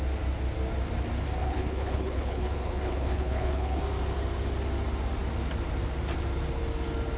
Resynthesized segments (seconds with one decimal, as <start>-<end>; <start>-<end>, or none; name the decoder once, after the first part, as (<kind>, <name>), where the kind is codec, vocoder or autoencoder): 1.4-3.8 (codec, HILCodec)